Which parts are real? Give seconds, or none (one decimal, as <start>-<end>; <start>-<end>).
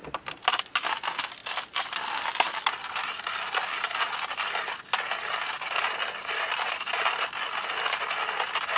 0.0-8.8